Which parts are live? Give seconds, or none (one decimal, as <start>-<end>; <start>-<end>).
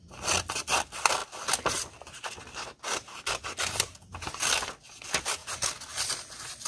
0.0-6.7